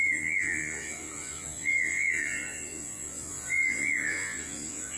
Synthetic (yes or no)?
yes